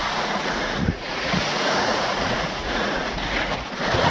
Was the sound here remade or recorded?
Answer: remade